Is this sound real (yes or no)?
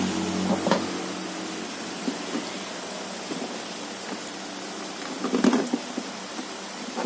yes